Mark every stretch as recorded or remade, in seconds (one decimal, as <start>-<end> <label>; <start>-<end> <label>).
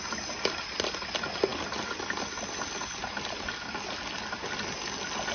0.0-5.3 recorded